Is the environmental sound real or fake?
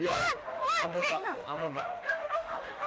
fake